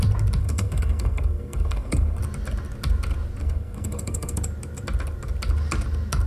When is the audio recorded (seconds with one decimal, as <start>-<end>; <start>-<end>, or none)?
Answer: 0.0-0.4; 2.2-3.4; 4.4-6.3